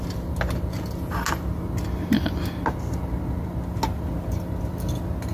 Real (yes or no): yes